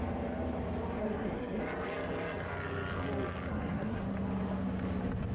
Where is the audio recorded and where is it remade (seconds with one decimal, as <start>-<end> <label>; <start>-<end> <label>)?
0.0-1.0 recorded; 1.0-1.6 remade; 1.6-3.5 recorded; 3.5-4.0 remade; 4.0-5.3 recorded